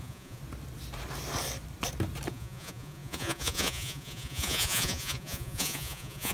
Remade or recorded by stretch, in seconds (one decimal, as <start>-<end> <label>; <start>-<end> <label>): 0.0-0.4 remade; 0.4-2.3 recorded; 2.3-6.3 remade

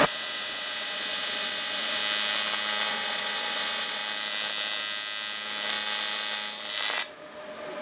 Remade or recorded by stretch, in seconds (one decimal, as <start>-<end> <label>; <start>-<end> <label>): 0.0-2.0 remade; 2.0-2.9 recorded; 2.9-4.0 remade; 4.0-7.8 recorded

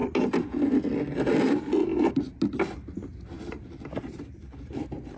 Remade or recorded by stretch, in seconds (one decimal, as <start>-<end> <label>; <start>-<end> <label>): 0.0-5.2 recorded

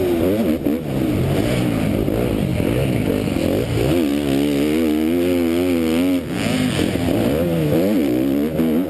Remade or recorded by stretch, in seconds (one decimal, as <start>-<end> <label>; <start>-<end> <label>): 0.0-8.9 recorded

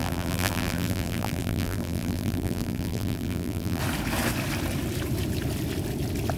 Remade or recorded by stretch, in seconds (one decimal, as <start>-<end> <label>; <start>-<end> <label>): 0.0-3.8 remade; 3.8-6.4 recorded

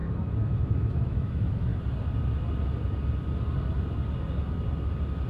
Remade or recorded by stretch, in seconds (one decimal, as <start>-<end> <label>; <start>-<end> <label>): 0.0-1.7 remade; 1.7-5.3 recorded

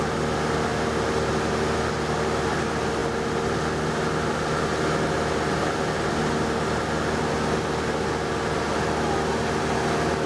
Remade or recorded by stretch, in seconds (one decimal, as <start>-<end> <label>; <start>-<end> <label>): 0.0-10.3 recorded